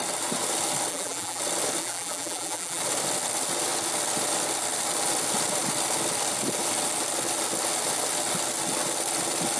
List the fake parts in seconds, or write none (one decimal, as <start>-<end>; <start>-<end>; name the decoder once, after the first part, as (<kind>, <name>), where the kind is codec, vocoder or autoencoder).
0.9-1.4 (vocoder, BigVGAN v2); 1.8-2.8